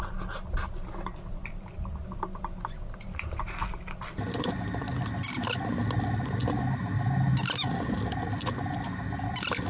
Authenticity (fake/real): real